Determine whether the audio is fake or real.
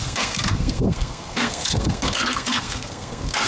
fake